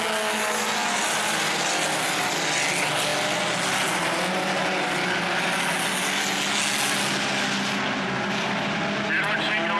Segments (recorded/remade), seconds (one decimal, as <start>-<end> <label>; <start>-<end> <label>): 0.0-9.8 recorded